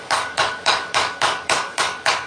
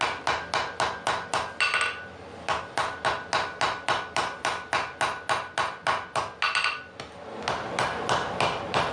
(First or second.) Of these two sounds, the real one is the second